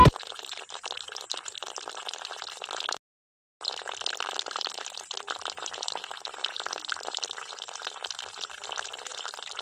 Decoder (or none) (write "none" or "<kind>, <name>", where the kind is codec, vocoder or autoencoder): none